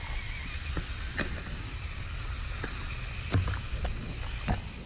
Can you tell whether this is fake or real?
real